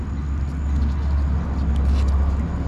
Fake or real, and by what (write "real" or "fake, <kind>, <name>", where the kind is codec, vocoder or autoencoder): real